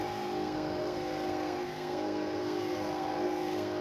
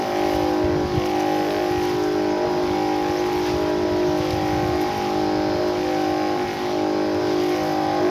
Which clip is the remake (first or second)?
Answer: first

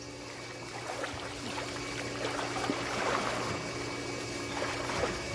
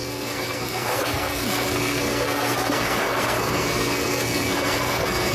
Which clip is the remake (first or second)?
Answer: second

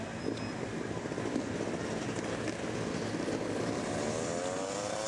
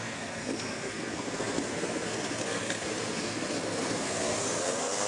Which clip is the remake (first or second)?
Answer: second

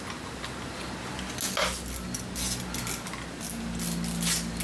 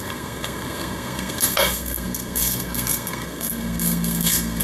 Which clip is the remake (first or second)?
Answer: second